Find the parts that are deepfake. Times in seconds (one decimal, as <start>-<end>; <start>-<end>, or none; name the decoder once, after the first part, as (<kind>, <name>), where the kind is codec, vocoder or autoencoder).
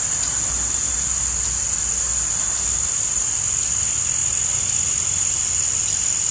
none